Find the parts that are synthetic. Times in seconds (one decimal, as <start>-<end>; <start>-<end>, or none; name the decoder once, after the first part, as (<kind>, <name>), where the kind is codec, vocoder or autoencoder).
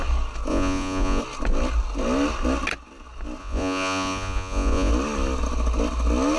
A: 0.5-1.2 (vocoder, Vocos); 3.4-4.9